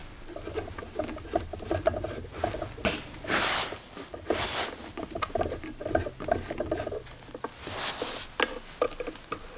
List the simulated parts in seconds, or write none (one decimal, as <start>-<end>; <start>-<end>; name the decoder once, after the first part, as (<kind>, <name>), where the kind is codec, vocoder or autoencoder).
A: 0.0-0.5 (vocoder, BigVGAN v2); 2.8-7.6